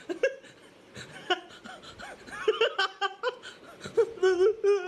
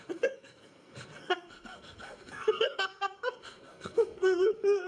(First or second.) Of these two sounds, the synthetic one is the second